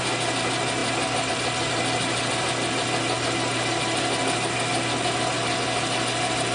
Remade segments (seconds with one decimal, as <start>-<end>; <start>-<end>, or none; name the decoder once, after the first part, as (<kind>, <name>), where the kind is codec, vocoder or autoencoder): none